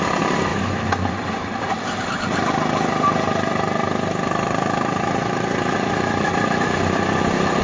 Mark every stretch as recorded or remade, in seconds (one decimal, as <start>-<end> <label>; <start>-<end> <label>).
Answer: 0.0-0.5 remade; 0.5-4.3 recorded; 4.3-7.6 remade

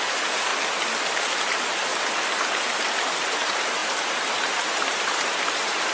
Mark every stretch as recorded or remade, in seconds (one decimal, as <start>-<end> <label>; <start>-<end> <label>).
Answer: 0.0-0.5 remade; 0.5-1.0 recorded; 1.0-1.9 remade; 1.9-2.7 recorded; 2.7-5.9 remade

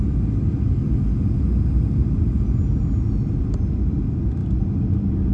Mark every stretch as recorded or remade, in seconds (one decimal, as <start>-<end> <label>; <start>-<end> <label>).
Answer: 0.0-4.4 recorded; 4.4-5.3 remade

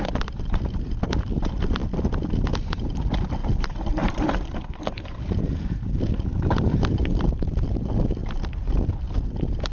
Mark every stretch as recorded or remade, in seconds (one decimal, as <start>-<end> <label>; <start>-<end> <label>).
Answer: 0.0-8.2 remade; 8.2-9.7 recorded

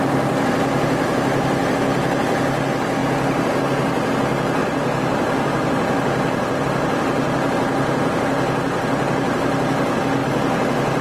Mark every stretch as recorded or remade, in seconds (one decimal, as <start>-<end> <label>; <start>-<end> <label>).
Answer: 0.0-4.6 recorded; 4.6-6.6 remade; 6.6-11.0 recorded